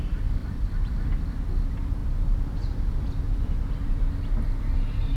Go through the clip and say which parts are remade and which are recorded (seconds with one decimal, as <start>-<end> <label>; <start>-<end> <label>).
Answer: 0.0-0.4 recorded; 0.4-0.9 remade; 0.9-2.0 recorded; 2.0-4.1 remade; 4.1-5.2 recorded